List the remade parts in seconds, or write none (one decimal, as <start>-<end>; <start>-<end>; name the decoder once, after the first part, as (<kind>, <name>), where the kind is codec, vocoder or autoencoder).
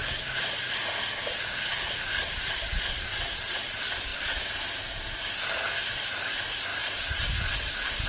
0.0-0.7 (vocoder, BigVGAN v2); 1.7-3.5; 4.1-4.9; 6.7-7.3